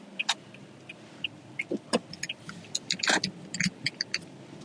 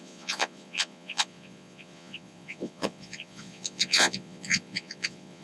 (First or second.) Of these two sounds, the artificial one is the second